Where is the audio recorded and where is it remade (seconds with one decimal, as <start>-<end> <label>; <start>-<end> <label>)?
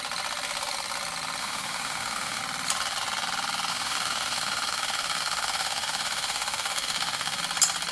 0.0-1.4 recorded; 1.4-2.4 remade; 2.4-3.7 recorded; 3.7-7.4 remade; 7.4-7.9 recorded